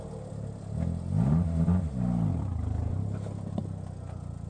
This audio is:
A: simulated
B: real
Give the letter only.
B